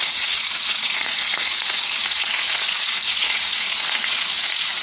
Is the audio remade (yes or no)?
yes